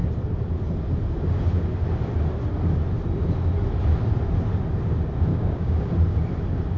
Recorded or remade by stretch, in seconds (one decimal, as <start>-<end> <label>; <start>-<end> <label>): 0.0-5.3 recorded; 5.3-5.9 remade; 5.9-6.8 recorded